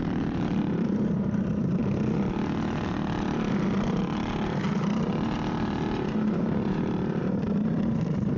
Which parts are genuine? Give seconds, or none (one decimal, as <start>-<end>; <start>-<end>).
1.8-6.4; 7.2-8.0